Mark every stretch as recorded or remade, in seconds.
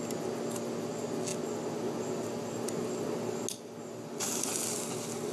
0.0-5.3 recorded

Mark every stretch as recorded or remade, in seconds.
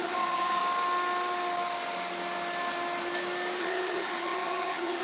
0.0-0.6 remade; 0.6-3.6 recorded; 3.6-5.0 remade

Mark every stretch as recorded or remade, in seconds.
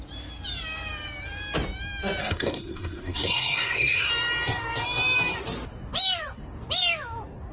0.0-2.2 recorded; 2.2-4.1 remade; 4.1-7.5 recorded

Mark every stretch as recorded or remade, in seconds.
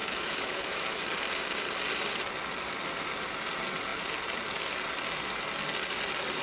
0.0-1.0 remade; 1.0-6.4 recorded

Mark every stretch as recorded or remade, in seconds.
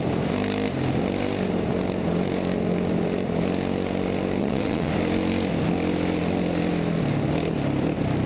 0.0-4.4 recorded; 4.4-4.9 remade; 4.9-8.3 recorded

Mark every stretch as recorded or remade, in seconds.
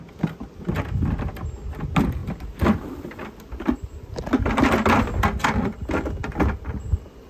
0.0-2.2 recorded; 2.2-4.7 remade; 4.7-6.2 recorded; 6.2-7.3 remade